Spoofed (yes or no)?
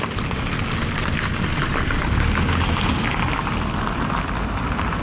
no